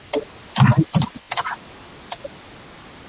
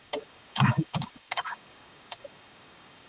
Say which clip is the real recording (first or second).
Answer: first